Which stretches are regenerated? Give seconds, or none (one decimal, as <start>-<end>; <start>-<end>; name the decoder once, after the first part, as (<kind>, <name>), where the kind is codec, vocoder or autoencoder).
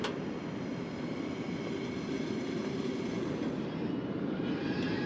none